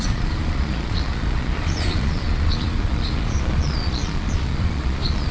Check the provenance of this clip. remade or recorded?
remade